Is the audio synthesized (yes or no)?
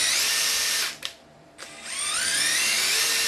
yes